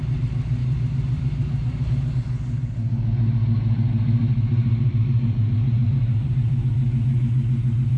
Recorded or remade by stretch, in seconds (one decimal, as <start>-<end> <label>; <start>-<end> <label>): 0.0-0.6 recorded; 0.6-1.9 remade; 1.9-4.2 recorded; 4.2-6.5 remade; 6.5-8.0 recorded